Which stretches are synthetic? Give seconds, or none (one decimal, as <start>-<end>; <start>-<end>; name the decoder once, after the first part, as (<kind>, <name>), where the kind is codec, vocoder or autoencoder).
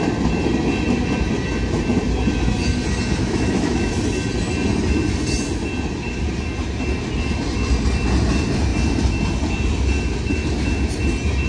3.2-3.9 (autoencoder, DAC-VAE)